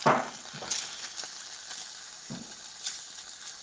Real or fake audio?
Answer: real